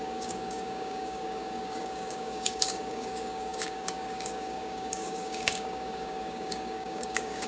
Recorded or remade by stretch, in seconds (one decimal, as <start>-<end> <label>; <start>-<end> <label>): 0.0-7.5 remade